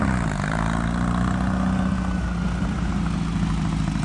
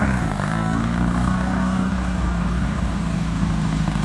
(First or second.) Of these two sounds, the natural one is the first